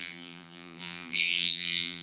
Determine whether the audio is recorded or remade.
remade